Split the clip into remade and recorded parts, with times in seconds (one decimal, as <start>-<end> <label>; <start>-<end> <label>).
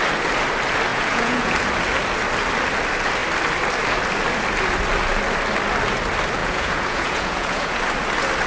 0.0-0.9 recorded; 0.9-1.5 remade; 1.5-6.4 recorded; 6.4-7.8 remade; 7.8-8.5 recorded